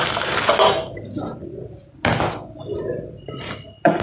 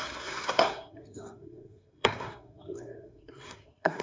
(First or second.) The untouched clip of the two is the first